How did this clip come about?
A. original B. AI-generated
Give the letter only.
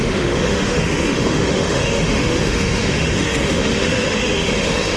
B